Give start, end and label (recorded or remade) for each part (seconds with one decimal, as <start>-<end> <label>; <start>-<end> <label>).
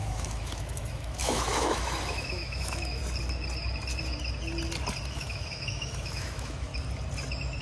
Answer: 0.0-3.0 remade; 3.0-5.1 recorded; 5.1-6.7 remade; 6.7-7.6 recorded